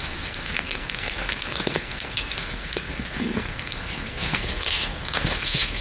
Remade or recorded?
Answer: remade